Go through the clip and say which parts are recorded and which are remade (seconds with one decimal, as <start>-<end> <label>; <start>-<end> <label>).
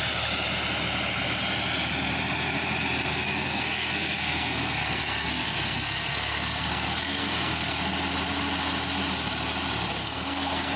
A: 0.0-3.1 recorded; 3.1-7.8 remade; 7.8-10.0 recorded; 10.0-10.8 remade